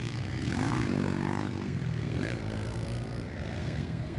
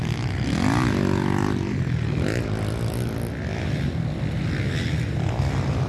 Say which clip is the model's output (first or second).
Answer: first